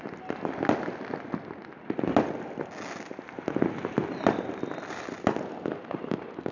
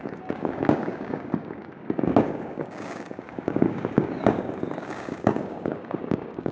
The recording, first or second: first